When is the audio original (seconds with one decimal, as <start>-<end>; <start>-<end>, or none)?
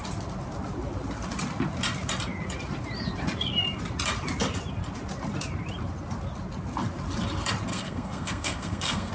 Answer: 0.0-7.7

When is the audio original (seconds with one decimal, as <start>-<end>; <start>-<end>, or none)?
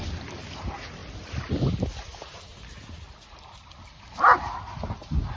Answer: 0.0-5.4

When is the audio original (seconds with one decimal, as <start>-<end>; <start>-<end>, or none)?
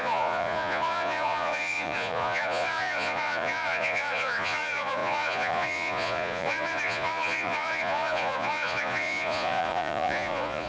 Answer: none